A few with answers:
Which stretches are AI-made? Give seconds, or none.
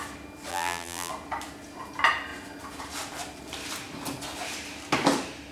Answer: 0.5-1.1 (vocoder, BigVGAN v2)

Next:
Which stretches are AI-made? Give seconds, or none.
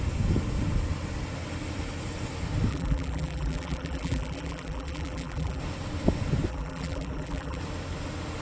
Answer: 2.7-5.6 (vocoder, BigVGAN v2); 6.5-7.6